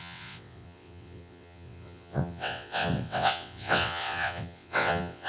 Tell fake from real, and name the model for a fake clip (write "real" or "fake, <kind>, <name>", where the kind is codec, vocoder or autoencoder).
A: fake, vocoder, WaveNeXt